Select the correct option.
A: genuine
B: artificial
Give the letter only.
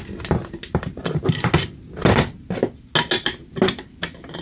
A